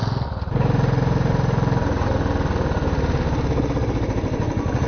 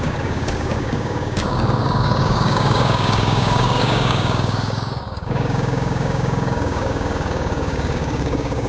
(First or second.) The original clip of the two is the first